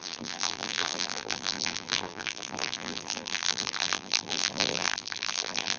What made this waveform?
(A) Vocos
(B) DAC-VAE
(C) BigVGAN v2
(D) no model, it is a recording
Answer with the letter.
C